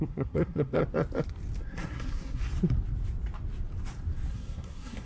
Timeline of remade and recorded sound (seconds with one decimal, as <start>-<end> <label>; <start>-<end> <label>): 0.0-0.8 remade; 0.8-1.6 recorded; 1.6-2.4 remade; 2.4-4.3 recorded; 4.3-5.0 remade